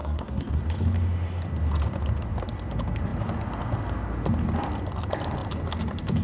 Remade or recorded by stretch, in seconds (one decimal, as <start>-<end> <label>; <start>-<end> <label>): 0.0-0.6 remade; 0.6-6.2 recorded